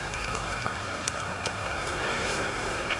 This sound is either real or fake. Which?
fake